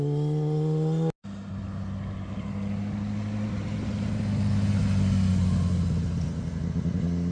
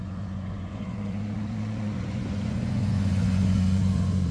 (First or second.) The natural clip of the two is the first